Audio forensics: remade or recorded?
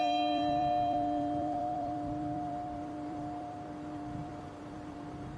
remade